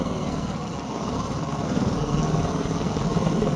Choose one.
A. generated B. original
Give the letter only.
A